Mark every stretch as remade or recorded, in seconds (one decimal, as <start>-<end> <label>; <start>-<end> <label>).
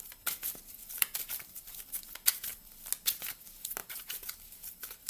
0.0-0.5 recorded; 0.5-1.8 remade; 1.8-3.8 recorded; 3.8-5.1 remade